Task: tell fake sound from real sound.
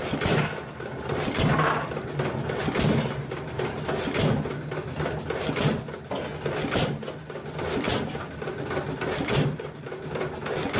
real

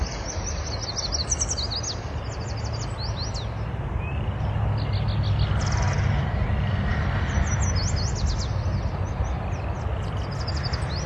real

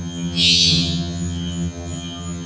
fake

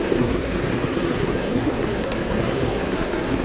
fake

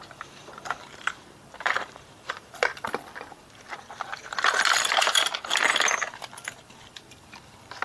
fake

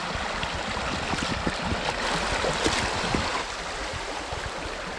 real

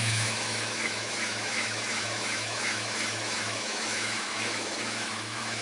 fake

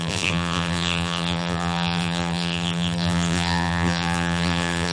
fake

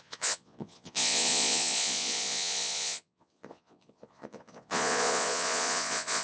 fake